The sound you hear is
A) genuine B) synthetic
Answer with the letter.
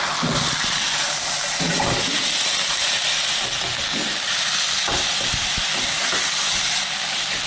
A